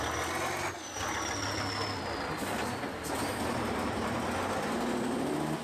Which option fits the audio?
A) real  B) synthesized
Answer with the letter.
A